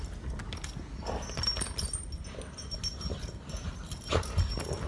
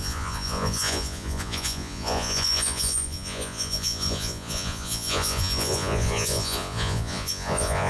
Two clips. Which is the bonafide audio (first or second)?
first